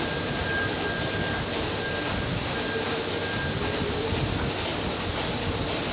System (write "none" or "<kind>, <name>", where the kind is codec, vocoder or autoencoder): none